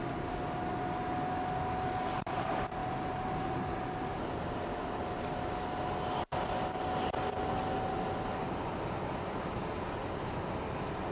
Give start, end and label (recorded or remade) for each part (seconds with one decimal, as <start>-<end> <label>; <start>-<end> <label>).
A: 0.0-2.8 recorded; 2.8-4.1 remade; 4.1-11.1 recorded